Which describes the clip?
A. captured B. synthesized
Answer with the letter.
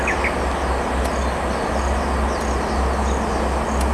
A